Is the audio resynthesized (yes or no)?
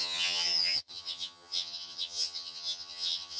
yes